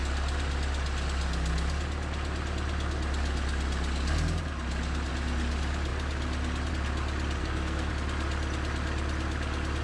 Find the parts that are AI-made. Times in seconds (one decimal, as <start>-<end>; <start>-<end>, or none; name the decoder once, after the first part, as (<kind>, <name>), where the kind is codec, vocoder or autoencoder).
7.4-7.9 (codec, SNAC)